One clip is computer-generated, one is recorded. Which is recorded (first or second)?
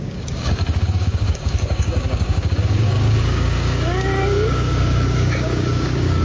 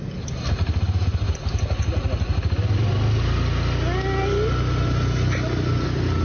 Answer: second